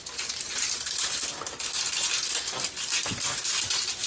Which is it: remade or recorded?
recorded